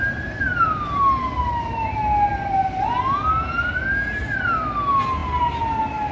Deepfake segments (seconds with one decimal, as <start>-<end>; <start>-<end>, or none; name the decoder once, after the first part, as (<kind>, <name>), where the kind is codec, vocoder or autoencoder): none